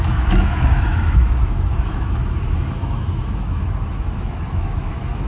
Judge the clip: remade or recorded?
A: remade